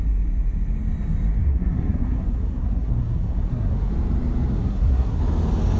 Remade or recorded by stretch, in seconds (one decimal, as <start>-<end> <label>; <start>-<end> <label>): 0.0-1.5 recorded; 1.5-3.9 remade; 3.9-4.6 recorded; 4.6-5.2 remade; 5.2-5.8 recorded